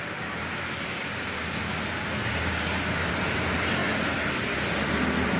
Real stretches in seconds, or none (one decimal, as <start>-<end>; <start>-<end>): 0.0-2.2; 3.1-5.4